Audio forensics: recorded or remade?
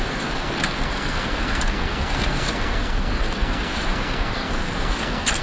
remade